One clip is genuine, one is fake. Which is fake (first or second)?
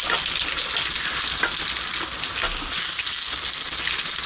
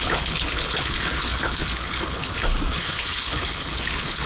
second